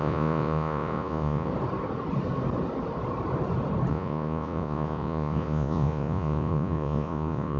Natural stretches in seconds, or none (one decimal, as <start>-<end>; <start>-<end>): 1.5-3.9

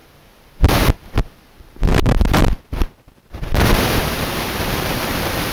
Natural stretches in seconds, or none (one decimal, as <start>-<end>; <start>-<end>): none

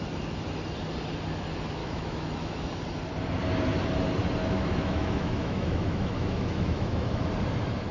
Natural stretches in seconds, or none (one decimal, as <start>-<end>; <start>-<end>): 0.0-1.8; 2.7-4.4; 7.3-7.9

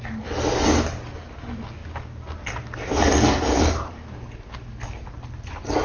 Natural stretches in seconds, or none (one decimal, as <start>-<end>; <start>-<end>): 0.0-5.8

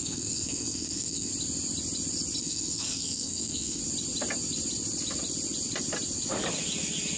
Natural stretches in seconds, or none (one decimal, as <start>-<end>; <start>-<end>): 1.3-2.4; 3.8-7.2